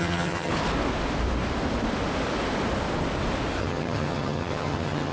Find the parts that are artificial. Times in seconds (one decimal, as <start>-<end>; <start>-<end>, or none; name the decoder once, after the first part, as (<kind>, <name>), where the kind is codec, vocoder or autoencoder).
0.0-0.5 (vocoder, HiFi-GAN); 3.6-5.1